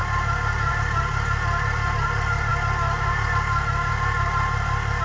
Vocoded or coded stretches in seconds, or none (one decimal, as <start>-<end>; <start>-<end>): none